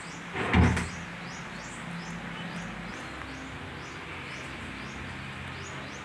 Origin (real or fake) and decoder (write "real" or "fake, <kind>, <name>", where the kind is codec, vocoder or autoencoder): real